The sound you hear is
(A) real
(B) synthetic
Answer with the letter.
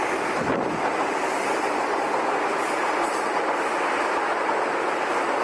A